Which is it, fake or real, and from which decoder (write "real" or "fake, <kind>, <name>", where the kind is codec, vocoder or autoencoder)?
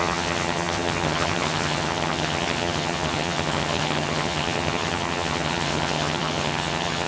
fake, vocoder, HiFi-GAN